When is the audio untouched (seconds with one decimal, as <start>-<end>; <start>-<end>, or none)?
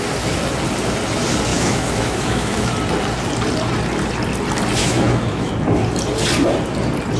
0.0-1.5; 2.7-4.8; 5.5-7.2